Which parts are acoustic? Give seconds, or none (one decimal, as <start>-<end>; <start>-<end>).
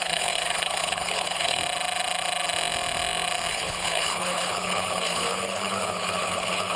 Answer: 1.6-3.5